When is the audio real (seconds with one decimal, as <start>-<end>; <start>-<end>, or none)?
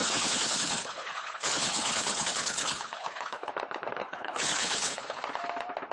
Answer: 3.5-4.0; 5.2-5.9